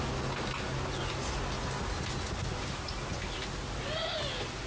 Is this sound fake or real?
real